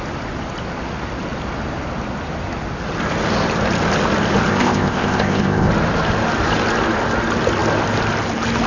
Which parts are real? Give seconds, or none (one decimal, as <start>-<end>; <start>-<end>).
0.0-4.5; 5.7-8.7